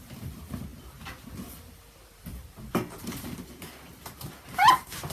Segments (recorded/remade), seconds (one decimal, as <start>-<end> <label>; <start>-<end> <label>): 0.0-5.1 recorded